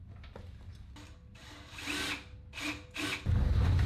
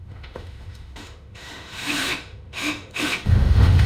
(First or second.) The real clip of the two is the first